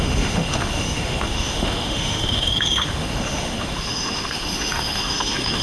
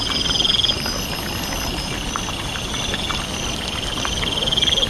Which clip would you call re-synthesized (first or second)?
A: first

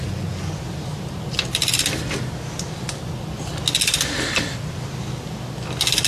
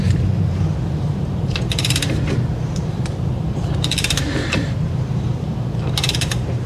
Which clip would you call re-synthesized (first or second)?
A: second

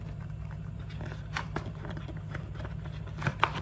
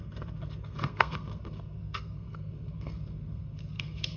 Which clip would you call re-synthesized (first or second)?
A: second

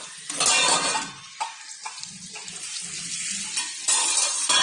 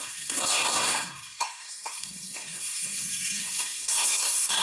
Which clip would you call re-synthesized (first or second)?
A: second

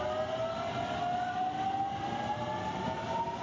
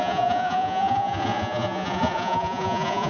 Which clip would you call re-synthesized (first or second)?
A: second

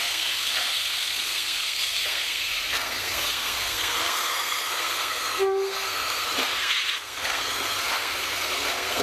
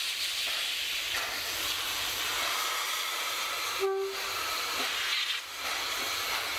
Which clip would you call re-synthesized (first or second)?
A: first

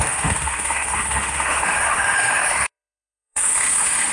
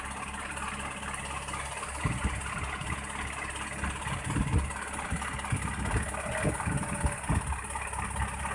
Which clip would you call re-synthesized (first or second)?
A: first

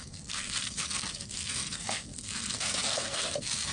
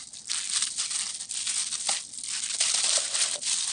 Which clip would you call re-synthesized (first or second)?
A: first